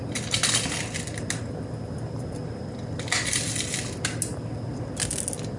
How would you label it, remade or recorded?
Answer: recorded